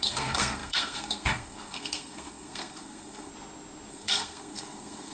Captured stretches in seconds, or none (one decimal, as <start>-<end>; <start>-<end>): 3.3-3.9